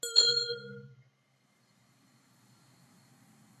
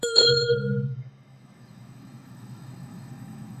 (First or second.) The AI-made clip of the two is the second